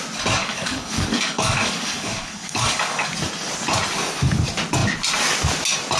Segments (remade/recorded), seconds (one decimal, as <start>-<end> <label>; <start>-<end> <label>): 0.0-0.4 recorded; 0.4-3.1 remade; 3.1-6.0 recorded